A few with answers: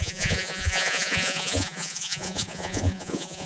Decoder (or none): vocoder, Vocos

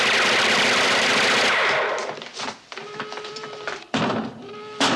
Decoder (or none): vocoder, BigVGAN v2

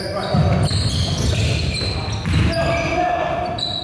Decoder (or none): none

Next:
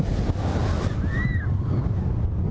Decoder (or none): none